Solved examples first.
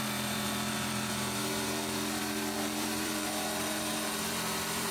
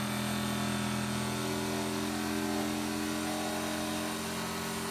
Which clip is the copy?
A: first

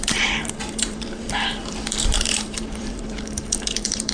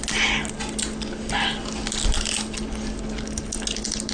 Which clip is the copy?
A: first